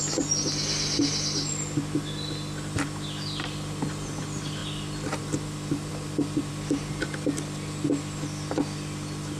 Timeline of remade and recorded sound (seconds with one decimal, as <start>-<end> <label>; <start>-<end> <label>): 0.0-9.4 recorded